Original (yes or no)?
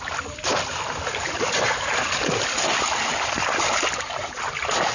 yes